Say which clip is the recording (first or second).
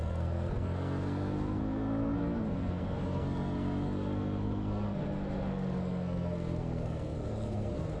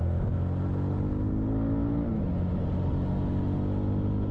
second